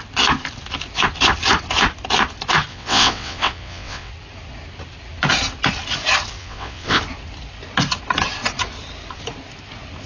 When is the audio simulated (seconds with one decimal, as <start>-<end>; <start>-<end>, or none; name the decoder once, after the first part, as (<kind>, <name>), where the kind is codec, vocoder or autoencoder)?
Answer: 2.7-4.1 (vocoder, WaveNeXt); 6.4-7.0